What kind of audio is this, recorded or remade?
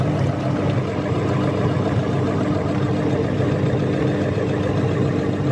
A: recorded